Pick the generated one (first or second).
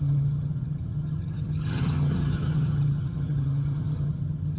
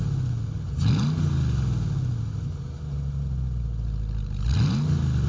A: first